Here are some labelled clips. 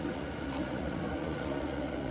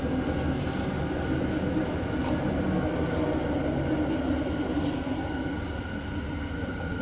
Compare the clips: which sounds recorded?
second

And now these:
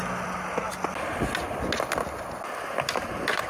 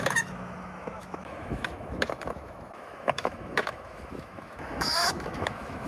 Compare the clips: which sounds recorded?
first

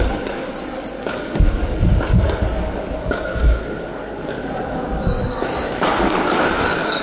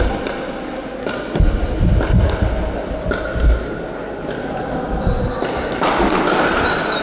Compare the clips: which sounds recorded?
second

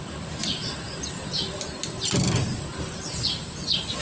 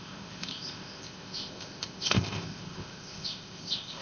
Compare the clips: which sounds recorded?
first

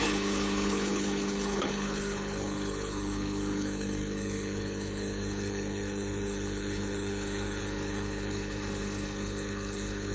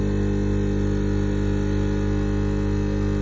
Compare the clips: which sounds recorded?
second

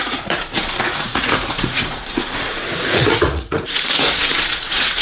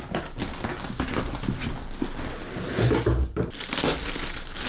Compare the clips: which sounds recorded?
second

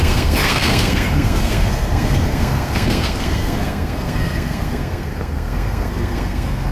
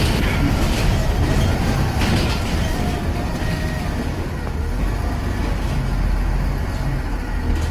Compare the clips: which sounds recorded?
second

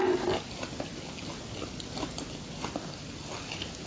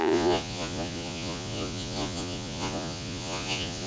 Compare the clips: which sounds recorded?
first